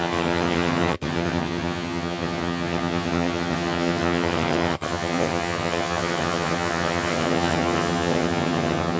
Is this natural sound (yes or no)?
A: no